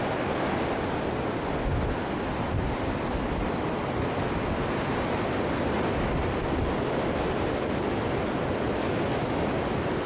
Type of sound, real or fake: real